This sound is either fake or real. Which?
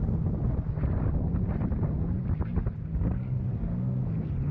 real